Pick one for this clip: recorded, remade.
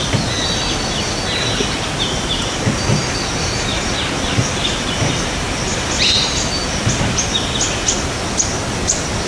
recorded